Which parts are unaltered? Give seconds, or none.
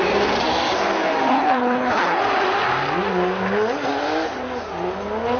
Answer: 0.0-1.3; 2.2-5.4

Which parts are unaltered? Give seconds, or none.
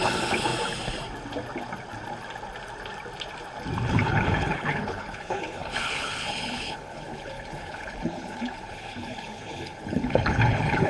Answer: 0.5-3.9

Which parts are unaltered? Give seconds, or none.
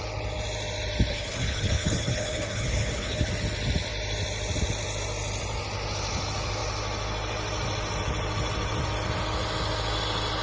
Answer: 0.0-1.1; 3.3-10.4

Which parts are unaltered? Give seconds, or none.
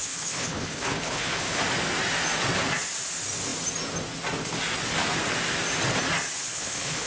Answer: 1.6-6.5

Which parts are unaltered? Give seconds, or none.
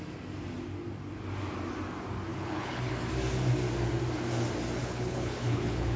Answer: 0.0-2.3; 2.9-4.8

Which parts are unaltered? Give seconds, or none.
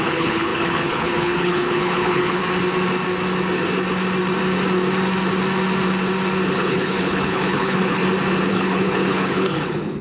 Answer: 2.4-6.5; 8.0-8.5